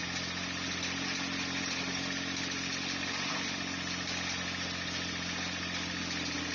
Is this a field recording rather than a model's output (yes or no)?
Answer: yes